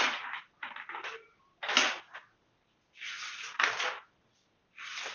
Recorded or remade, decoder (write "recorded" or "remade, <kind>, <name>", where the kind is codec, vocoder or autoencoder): recorded